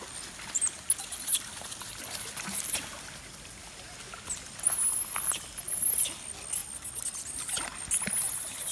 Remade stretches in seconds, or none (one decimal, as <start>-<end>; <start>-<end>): none